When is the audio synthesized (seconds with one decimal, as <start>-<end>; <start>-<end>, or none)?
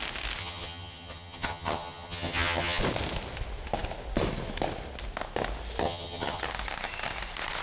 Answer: 0.4-2.8; 5.8-6.4